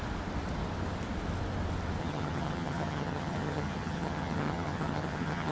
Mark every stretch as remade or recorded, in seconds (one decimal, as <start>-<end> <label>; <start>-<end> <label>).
0.0-2.0 recorded; 2.0-5.5 remade